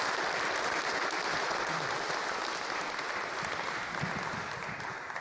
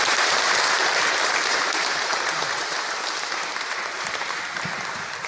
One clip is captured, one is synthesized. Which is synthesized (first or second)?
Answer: second